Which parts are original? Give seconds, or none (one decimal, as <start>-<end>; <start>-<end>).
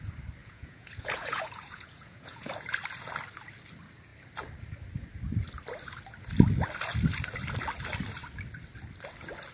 0.0-0.4; 2.5-9.5